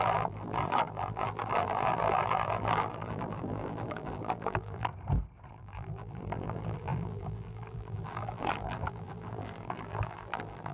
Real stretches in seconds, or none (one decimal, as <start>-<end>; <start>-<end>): 4.9-5.5